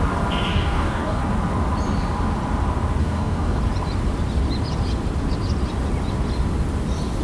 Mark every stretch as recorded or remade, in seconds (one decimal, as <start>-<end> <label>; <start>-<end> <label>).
0.0-0.5 recorded; 0.5-1.2 remade; 1.2-3.0 recorded; 3.0-3.6 remade; 3.6-7.2 recorded